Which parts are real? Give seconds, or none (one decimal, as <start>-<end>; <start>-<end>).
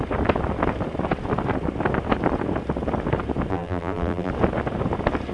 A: 0.0-3.5; 4.3-5.3